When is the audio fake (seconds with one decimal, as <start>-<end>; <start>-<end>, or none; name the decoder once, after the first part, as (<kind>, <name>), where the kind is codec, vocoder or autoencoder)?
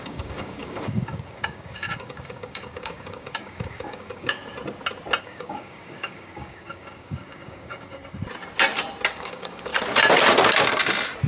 0.0-4.4 (codec, DAC); 5.2-8.0; 9.1-9.7